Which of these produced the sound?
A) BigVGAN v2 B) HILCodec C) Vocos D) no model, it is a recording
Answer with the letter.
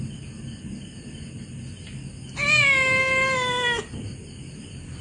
D